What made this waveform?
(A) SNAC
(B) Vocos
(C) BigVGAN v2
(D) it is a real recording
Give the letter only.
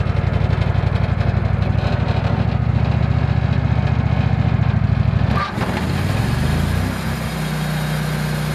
D